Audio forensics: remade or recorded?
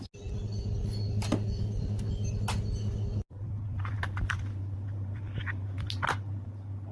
recorded